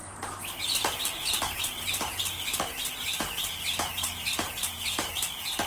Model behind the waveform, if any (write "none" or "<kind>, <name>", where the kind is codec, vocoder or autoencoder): none